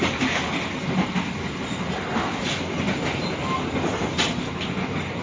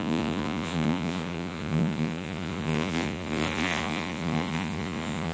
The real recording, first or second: first